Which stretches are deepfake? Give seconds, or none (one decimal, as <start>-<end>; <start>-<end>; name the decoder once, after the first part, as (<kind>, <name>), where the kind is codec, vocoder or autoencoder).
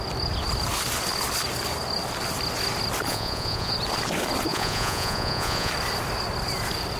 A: 3.1-3.7 (vocoder, Vocos); 4.5-5.7